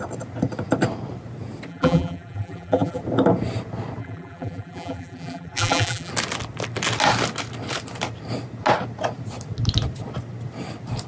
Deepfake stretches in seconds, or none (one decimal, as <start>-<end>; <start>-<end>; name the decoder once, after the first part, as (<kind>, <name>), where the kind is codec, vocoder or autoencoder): 1.7-3.0 (vocoder, BigVGAN v2); 4.0-6.1